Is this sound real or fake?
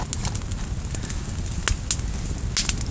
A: real